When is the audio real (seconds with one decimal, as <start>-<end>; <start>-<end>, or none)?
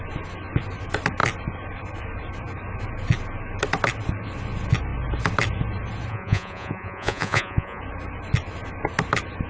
0.0-6.1; 7.8-9.5